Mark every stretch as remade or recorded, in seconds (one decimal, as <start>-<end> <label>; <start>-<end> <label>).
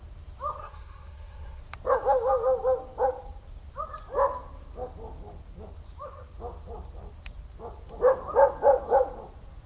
0.0-0.6 recorded; 0.6-1.6 remade; 1.6-9.7 recorded